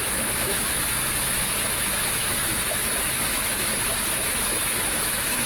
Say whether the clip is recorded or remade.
remade